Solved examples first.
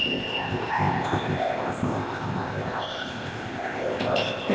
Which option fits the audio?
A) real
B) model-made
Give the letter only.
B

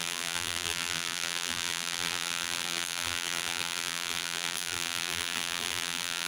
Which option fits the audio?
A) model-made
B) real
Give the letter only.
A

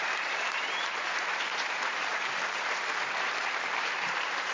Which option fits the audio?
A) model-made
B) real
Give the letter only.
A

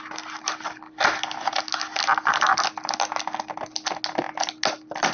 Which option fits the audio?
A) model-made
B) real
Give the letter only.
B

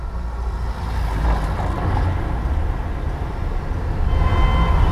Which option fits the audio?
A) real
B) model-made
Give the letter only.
A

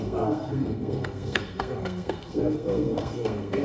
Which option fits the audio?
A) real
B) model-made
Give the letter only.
B